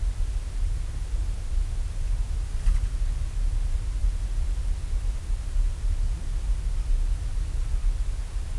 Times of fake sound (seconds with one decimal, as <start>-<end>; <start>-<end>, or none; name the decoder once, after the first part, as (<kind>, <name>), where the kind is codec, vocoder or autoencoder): none